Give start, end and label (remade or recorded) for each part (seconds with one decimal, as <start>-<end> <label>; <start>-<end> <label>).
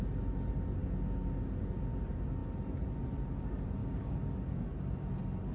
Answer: 0.0-3.8 recorded; 3.8-4.3 remade; 4.3-5.5 recorded